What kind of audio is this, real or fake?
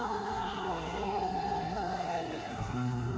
fake